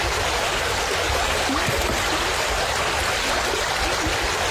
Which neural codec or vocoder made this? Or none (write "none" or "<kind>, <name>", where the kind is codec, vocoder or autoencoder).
none